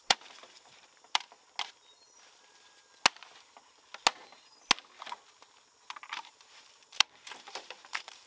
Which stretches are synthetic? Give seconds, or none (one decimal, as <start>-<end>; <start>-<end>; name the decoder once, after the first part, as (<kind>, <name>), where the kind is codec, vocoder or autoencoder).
0.0-1.4 (vocoder, BigVGAN v2); 6.0-8.3